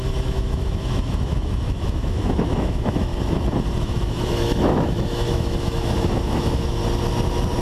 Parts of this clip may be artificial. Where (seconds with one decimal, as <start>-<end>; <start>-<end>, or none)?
0.0-3.1; 3.8-6.8